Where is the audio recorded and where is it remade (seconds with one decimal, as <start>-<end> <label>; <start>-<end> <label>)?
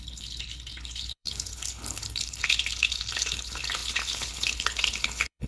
0.0-5.5 remade